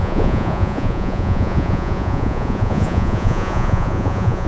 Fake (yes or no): yes